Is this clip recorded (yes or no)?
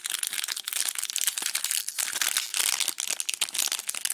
yes